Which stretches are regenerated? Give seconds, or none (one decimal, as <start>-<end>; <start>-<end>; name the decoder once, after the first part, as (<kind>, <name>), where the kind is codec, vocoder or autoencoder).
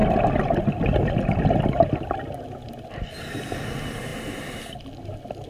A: none